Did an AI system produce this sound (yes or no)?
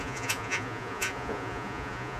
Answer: yes